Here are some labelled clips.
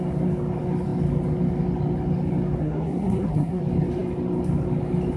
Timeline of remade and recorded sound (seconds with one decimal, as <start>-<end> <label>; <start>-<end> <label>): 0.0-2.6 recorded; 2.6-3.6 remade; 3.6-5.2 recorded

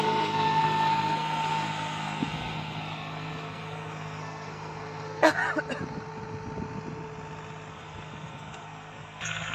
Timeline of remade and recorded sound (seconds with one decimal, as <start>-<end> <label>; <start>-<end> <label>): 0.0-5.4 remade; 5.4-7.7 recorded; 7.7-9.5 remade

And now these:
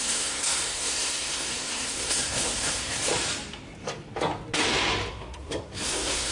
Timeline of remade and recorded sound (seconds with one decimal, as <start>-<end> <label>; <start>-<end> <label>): 0.0-3.1 remade; 3.1-5.1 recorded; 5.1-6.3 remade